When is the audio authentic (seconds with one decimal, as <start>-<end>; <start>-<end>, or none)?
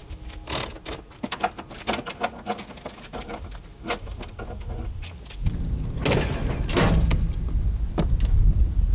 0.0-8.9